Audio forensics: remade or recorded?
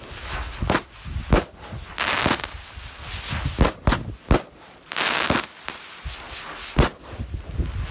recorded